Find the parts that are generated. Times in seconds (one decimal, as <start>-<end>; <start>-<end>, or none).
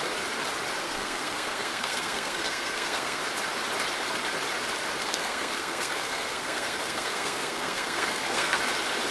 0.8-3.2; 5.0-8.6